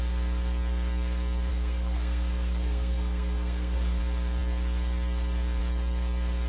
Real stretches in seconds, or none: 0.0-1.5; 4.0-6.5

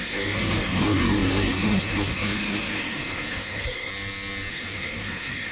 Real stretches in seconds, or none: 3.9-4.5

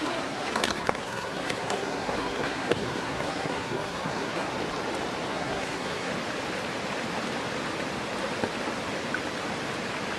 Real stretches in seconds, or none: 4.5-5.3; 6.1-10.2